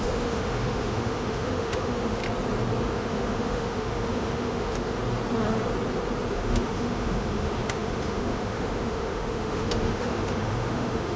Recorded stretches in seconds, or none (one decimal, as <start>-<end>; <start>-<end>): 2.2-2.8; 5.0-6.3